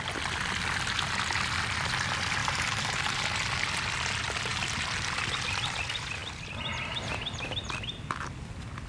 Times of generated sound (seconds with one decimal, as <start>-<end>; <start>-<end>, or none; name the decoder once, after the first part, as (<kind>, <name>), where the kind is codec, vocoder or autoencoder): 2.4-3.2 (vocoder, BigVGAN v2)